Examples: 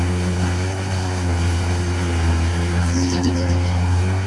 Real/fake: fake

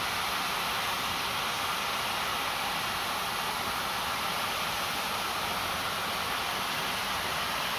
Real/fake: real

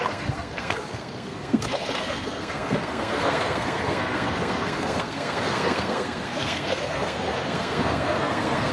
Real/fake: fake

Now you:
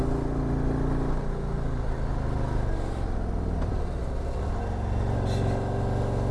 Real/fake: real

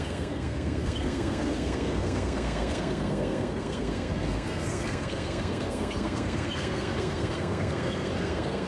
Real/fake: fake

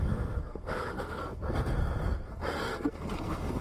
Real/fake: fake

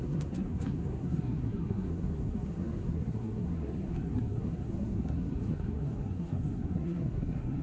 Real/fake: fake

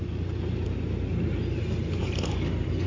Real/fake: real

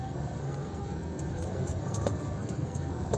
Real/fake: fake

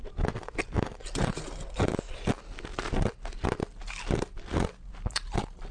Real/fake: real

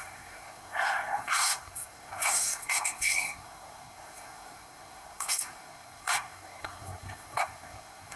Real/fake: fake